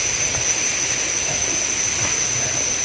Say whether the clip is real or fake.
real